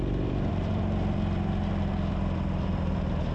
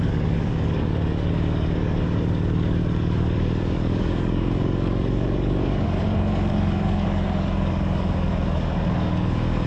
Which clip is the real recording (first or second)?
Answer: first